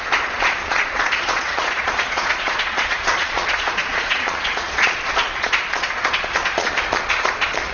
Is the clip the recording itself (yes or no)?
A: no